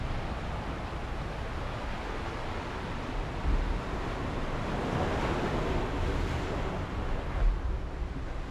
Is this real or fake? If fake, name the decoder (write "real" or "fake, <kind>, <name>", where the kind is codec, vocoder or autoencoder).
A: real